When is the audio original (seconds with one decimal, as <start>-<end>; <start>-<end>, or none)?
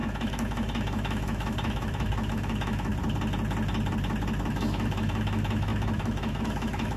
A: 2.9-4.5